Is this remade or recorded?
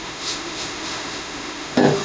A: remade